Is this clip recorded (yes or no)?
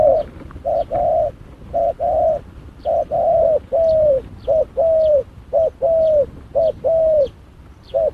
yes